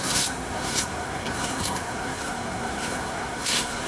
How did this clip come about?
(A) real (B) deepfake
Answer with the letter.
B